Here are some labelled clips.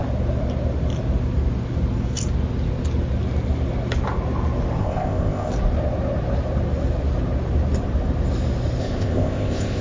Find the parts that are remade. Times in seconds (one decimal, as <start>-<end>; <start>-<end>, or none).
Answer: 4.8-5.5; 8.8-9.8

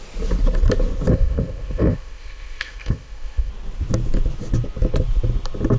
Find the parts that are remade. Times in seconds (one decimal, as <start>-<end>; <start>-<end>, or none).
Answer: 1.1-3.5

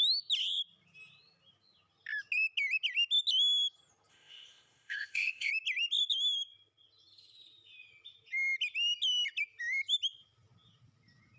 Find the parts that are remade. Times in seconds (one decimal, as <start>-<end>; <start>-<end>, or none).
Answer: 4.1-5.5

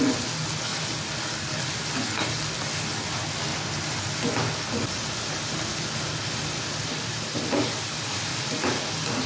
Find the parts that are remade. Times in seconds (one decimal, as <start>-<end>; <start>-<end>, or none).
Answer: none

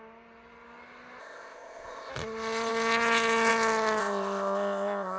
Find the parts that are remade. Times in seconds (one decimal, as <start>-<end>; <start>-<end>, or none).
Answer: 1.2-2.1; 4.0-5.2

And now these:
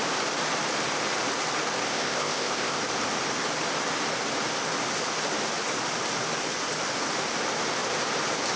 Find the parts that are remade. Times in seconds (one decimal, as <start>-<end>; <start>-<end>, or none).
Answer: 1.9-2.8